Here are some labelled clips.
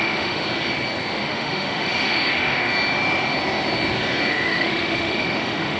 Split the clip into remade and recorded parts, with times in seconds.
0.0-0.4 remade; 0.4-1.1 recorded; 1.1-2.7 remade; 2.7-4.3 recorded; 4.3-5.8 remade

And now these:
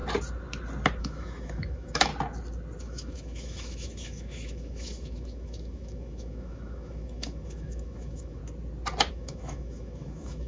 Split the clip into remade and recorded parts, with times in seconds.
0.0-1.0 recorded; 1.0-2.1 remade; 2.1-2.8 recorded; 2.8-8.4 remade; 8.4-9.1 recorded; 9.1-10.5 remade

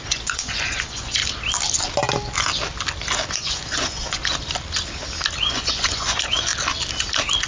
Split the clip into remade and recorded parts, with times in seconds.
0.0-1.2 remade; 1.2-3.3 recorded; 3.3-4.2 remade; 4.2-5.5 recorded; 5.5-6.5 remade; 6.5-7.5 recorded

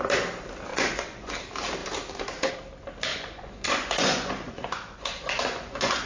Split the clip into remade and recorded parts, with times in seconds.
0.0-0.7 recorded; 0.7-1.4 remade; 1.4-3.1 recorded; 3.1-6.1 remade

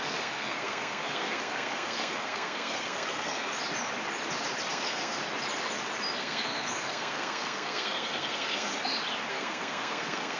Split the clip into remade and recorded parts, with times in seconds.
0.0-3.5 remade; 3.5-4.7 recorded; 4.7-5.2 remade; 5.2-6.2 recorded; 6.2-8.7 remade; 8.7-9.3 recorded; 9.3-10.4 remade

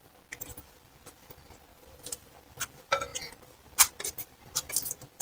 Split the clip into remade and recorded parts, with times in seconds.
0.0-1.7 recorded; 1.7-2.3 remade; 2.3-5.2 recorded